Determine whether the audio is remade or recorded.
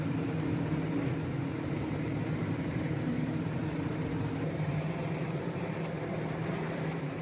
remade